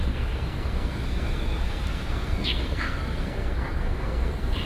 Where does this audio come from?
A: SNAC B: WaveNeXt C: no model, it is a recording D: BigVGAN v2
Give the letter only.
A